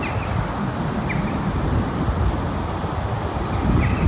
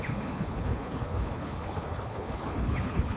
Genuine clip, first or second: first